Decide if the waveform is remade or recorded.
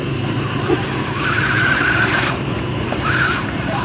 remade